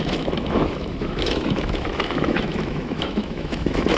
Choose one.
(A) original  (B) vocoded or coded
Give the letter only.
B